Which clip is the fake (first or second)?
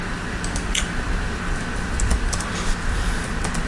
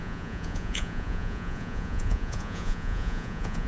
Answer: second